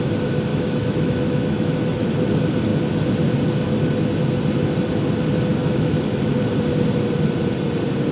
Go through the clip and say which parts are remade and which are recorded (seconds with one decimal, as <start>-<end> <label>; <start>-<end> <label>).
0.0-0.5 recorded; 0.5-2.1 remade; 2.1-5.5 recorded; 5.5-6.4 remade; 6.4-8.1 recorded